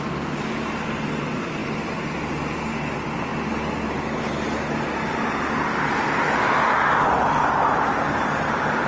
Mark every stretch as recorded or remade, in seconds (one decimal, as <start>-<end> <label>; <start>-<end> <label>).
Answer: 0.0-8.9 recorded